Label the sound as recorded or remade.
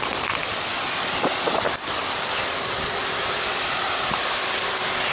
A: remade